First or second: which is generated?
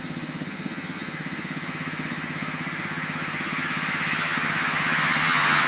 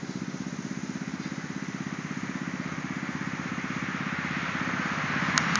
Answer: first